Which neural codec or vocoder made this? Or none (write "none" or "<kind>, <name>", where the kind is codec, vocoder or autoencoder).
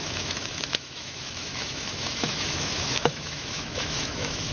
autoencoder, DAC-VAE